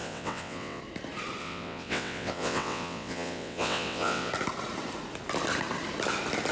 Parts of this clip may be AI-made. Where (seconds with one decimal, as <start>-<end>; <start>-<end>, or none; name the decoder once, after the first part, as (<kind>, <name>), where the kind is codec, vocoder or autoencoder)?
0.0-0.8 (vocoder, WaveNeXt); 1.4-4.3